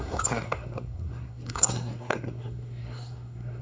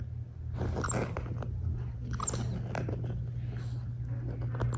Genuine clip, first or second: second